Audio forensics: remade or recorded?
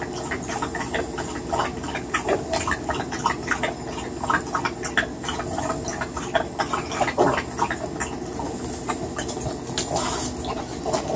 recorded